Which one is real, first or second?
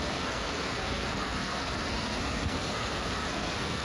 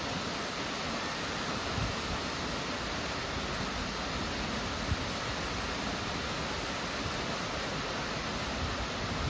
second